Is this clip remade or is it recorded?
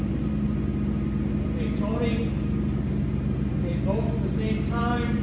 recorded